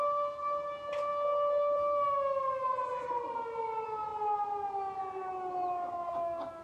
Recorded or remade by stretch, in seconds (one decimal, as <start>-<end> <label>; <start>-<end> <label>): 0.0-6.6 recorded